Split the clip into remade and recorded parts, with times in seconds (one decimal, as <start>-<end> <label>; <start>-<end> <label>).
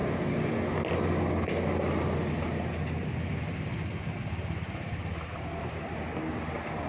0.0-6.9 recorded